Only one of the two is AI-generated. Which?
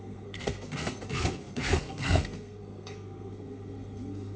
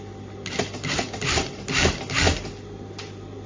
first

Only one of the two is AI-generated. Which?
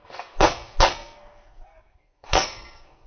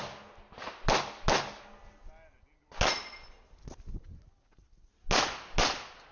first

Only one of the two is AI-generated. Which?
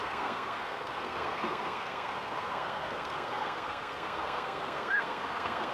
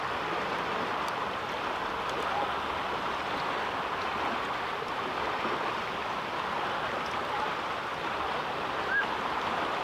first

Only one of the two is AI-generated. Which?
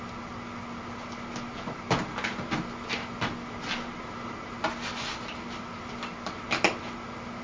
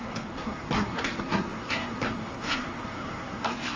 second